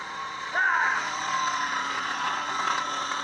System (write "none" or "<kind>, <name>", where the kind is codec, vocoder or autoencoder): vocoder, Vocos